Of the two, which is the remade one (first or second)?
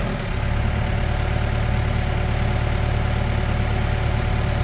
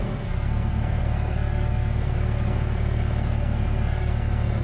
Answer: second